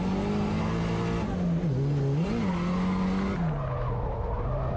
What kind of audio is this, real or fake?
real